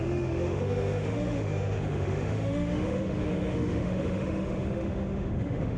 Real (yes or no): no